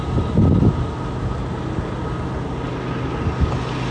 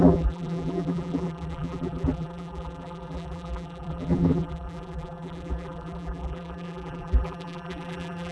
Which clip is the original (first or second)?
first